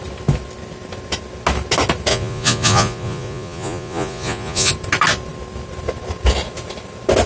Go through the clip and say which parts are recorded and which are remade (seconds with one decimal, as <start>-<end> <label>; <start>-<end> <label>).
0.0-2.1 recorded; 2.1-4.7 remade; 4.7-7.3 recorded